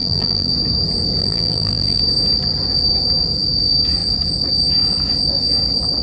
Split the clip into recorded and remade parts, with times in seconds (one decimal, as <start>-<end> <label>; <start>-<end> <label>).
0.0-0.5 remade; 0.5-1.2 recorded; 1.2-2.0 remade; 2.0-6.0 recorded